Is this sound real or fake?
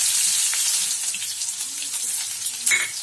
real